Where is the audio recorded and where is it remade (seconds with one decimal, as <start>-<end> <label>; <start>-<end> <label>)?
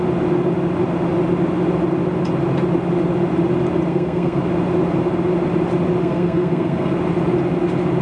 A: 0.0-3.9 recorded; 3.9-4.4 remade; 4.4-6.0 recorded; 6.0-6.9 remade; 6.9-8.0 recorded